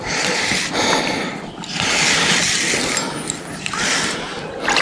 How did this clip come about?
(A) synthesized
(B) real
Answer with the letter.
B